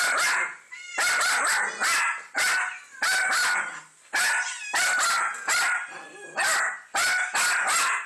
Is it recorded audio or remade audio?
recorded